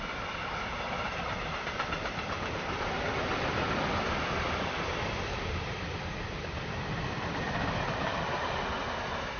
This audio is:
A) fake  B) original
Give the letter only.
A